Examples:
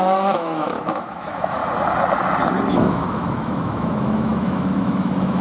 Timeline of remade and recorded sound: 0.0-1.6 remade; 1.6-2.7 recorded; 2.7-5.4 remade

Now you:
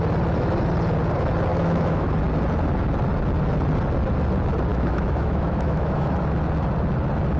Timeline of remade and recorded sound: 0.0-1.5 recorded; 1.5-2.1 remade; 2.1-4.7 recorded; 4.7-6.2 remade; 6.2-7.4 recorded